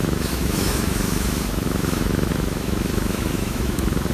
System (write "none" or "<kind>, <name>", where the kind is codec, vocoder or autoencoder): autoencoder, DAC-VAE